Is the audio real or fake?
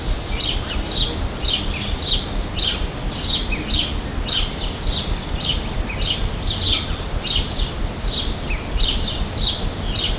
real